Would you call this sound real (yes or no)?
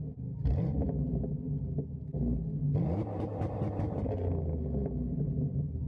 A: yes